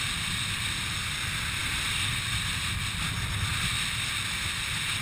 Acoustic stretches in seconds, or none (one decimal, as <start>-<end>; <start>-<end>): 0.0-5.0